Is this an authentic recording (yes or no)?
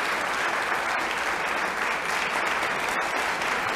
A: yes